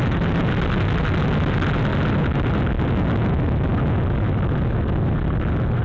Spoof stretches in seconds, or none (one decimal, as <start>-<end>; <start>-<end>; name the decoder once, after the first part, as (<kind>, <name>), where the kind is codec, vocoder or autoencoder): none